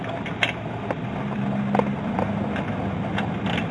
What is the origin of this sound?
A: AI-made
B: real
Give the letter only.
B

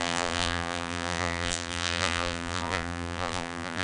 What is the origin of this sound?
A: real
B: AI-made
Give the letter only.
B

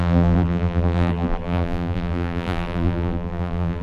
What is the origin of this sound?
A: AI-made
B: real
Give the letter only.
A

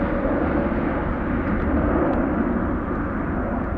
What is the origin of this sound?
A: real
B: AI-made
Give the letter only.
A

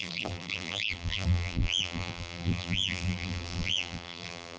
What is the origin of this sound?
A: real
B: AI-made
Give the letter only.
B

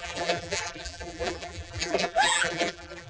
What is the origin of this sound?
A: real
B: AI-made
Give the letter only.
B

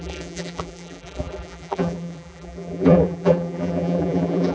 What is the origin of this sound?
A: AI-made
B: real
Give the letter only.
A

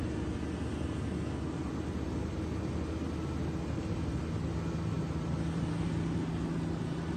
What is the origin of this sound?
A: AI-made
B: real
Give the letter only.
B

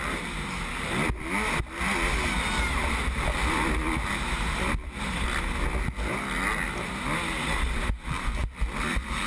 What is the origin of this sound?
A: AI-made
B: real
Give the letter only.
B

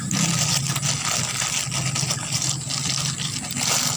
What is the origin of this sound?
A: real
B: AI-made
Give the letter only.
A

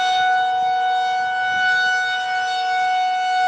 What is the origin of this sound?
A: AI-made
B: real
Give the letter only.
B